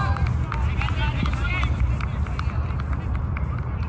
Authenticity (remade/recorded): recorded